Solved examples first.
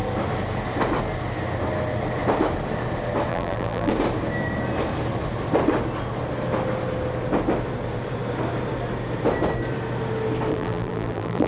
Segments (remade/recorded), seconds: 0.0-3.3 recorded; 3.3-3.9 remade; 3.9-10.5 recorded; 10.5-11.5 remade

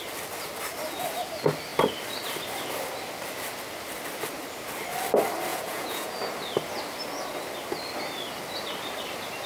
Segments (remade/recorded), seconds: 0.0-5.5 recorded; 5.5-6.1 remade; 6.1-9.5 recorded